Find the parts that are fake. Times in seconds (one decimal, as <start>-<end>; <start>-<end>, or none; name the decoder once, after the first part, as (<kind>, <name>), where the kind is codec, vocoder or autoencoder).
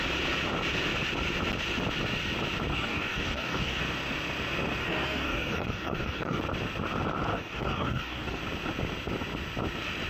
2.7-3.8 (codec, DAC); 4.8-6.4; 7.3-8.4